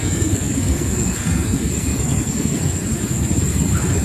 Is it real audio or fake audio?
fake